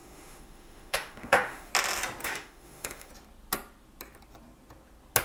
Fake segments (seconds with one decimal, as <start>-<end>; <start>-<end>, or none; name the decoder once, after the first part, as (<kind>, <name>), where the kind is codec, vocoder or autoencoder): 0.0-1.7 (autoencoder, DAC-VAE); 2.2-3.1